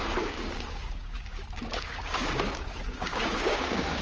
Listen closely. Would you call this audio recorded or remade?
remade